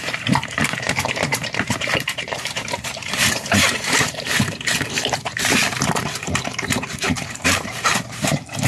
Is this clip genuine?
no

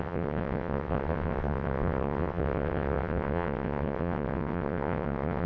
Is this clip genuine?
no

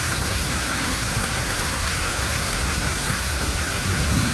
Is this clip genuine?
no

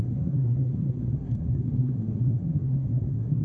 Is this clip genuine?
no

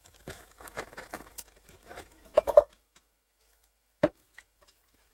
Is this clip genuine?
no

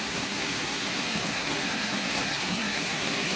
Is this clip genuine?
no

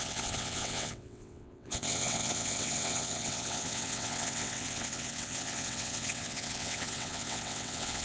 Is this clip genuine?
no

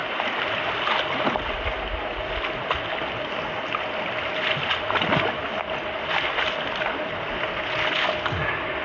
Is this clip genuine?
yes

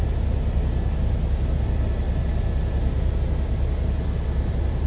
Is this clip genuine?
yes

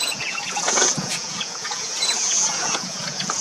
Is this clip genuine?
no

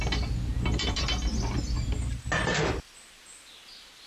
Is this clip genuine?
yes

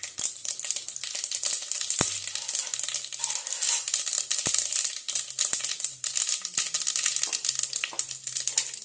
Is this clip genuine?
yes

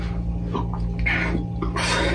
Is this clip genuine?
yes